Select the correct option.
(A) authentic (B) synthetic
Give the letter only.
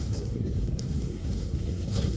B